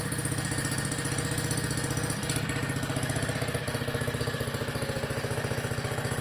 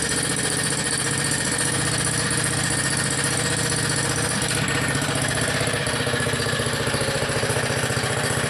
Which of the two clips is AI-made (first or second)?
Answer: second